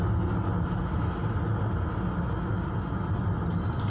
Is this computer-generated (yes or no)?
no